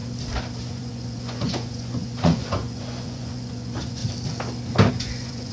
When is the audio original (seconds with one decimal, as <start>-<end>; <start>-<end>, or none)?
0.0-0.7; 4.0-4.9